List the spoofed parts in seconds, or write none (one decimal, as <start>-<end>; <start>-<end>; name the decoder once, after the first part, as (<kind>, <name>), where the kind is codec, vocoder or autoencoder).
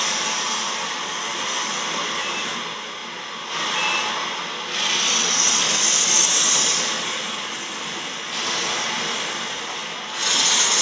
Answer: none